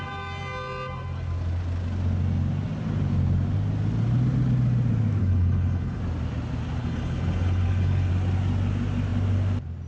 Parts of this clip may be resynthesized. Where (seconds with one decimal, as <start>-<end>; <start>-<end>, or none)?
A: 5.2-6.0; 6.8-8.1